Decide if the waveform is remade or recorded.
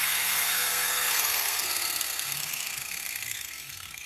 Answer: remade